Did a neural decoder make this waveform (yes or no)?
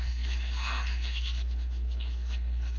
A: yes